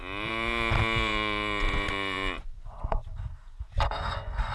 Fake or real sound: fake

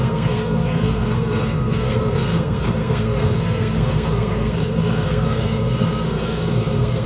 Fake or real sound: fake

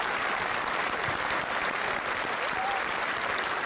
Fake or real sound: real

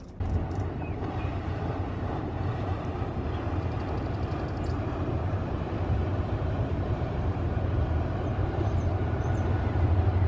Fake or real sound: fake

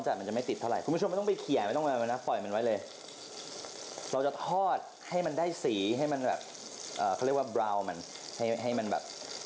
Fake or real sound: real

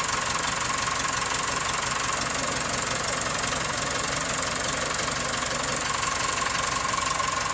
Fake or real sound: real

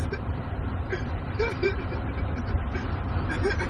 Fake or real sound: fake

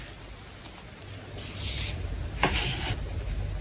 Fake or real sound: real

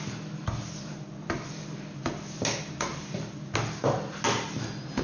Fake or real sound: real